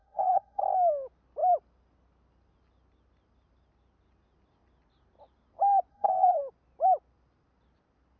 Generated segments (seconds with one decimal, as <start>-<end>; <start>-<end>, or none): 0.0-0.6; 5.9-6.4